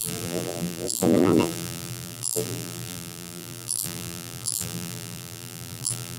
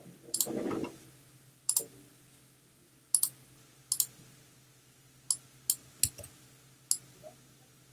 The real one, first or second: second